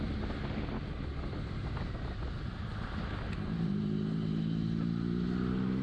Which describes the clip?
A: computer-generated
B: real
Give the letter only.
B